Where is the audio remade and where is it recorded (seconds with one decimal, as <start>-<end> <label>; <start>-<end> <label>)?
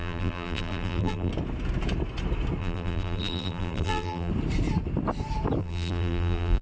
0.0-1.3 remade; 1.3-2.6 recorded; 2.6-4.3 remade; 4.3-5.6 recorded; 5.6-6.6 remade